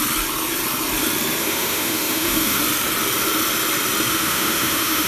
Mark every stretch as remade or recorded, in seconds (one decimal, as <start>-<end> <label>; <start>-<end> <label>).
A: 0.0-1.4 recorded; 1.4-2.6 remade; 2.6-4.1 recorded; 4.1-5.1 remade